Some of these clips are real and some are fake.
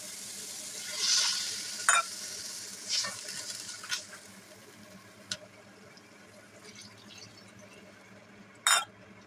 real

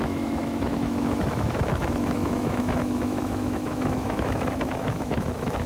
fake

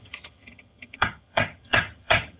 fake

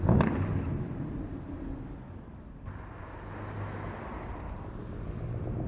real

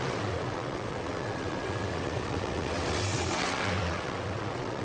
fake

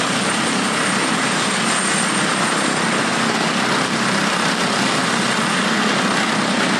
real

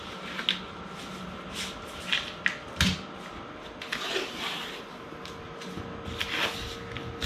real